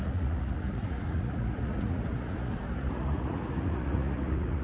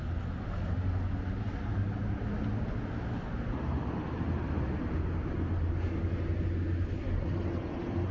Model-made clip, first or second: first